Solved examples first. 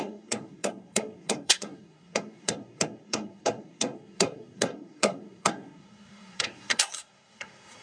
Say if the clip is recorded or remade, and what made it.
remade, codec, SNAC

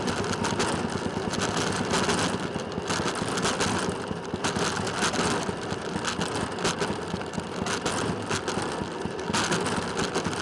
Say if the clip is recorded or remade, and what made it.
recorded